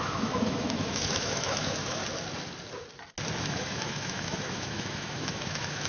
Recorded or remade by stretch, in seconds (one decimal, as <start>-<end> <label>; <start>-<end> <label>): 0.0-2.0 remade; 2.0-3.4 recorded; 3.4-5.9 remade